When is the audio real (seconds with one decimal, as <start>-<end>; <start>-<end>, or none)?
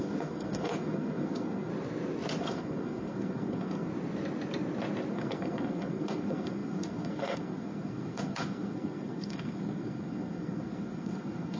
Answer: 1.7-2.4; 3.9-5.1